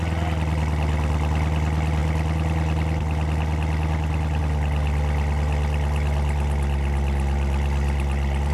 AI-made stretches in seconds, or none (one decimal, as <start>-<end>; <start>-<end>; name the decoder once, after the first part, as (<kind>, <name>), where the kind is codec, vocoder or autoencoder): none